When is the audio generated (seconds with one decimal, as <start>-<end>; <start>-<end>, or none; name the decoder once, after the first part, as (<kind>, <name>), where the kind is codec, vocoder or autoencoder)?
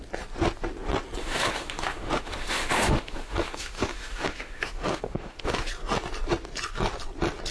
1.2-5.7 (autoencoder, DAC-VAE)